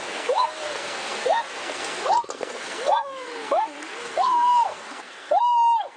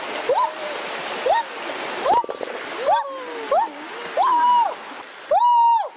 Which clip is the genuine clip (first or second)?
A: second